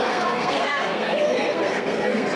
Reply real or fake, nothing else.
fake